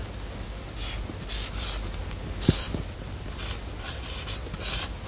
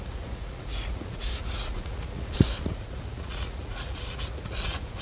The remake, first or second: second